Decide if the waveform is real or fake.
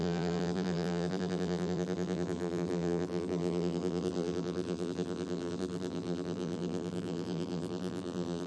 fake